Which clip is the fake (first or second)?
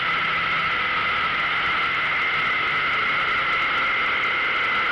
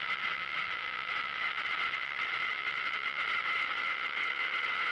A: second